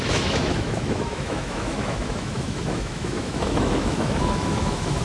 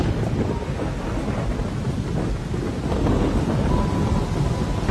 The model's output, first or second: first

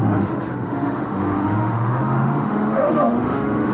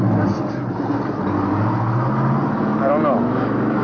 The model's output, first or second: first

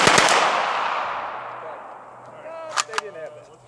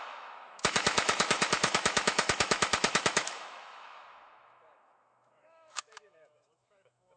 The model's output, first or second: second